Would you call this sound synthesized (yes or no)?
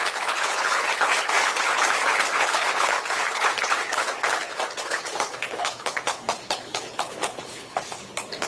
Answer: yes